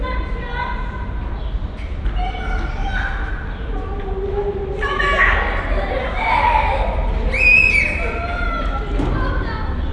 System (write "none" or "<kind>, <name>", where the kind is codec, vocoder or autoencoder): none